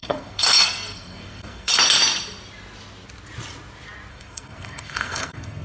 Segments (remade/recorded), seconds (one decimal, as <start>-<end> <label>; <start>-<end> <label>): 0.0-1.7 remade; 1.7-4.1 recorded; 4.1-5.6 remade